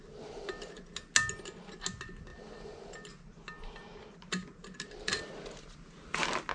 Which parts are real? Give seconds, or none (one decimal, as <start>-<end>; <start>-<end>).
0.0-6.5